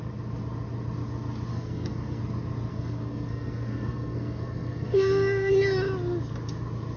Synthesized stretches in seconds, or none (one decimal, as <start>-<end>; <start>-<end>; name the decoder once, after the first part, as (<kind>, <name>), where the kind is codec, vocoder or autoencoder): 1.5-2.2 (codec, SNAC); 2.7-5.5

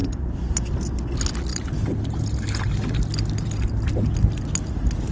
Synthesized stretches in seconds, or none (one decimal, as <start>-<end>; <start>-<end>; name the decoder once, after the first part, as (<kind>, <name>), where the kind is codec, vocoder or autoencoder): 0.0-0.7 (vocoder, BigVGAN v2); 1.5-2.7

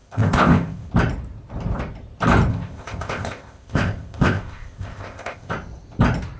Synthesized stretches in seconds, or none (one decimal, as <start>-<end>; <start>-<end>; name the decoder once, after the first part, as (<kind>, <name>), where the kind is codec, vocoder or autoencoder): 0.0-0.9 (codec, ZipCodec); 2.5-5.5

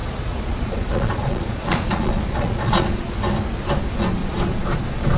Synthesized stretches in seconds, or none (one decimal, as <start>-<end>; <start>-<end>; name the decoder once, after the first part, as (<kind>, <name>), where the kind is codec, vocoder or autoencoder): 0.0-3.1 (vocoder, Vocos); 4.2-5.2

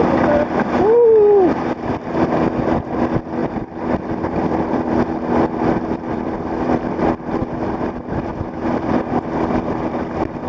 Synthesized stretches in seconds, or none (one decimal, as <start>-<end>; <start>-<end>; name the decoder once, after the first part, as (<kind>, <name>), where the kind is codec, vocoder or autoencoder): 3.4-7.0 (vocoder, BigVGAN v2); 7.4-8.3

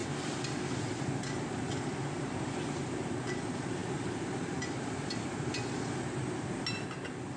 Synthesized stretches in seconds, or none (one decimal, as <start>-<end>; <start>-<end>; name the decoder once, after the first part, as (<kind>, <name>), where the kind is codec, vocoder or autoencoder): none